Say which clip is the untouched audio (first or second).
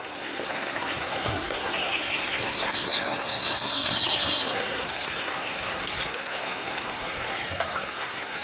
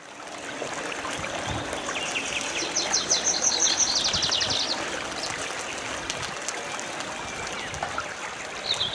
second